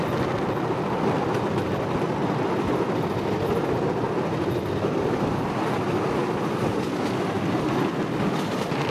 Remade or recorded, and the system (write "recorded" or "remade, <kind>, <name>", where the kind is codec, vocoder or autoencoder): recorded